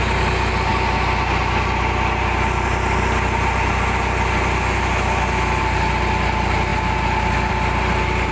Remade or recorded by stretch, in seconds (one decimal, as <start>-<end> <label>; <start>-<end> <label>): 0.0-8.3 recorded